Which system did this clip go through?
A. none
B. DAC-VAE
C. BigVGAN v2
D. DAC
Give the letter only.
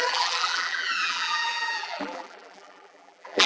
C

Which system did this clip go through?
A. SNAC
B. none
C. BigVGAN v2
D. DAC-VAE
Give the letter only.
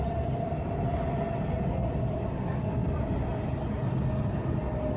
B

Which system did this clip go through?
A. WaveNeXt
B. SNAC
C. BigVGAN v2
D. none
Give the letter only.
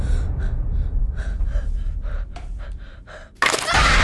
D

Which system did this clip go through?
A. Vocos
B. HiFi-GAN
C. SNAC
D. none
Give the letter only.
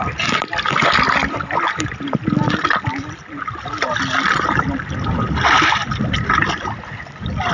D